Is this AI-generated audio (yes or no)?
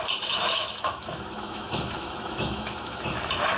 yes